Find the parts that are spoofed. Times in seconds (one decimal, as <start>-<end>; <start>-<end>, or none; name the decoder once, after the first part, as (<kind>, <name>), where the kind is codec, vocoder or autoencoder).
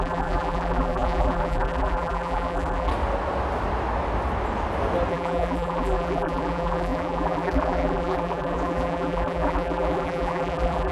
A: 0.0-2.9 (vocoder, BigVGAN v2); 5.1-10.9